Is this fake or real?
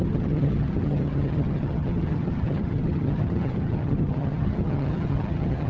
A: fake